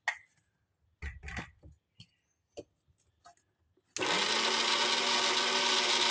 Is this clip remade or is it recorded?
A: recorded